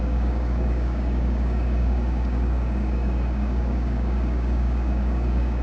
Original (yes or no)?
no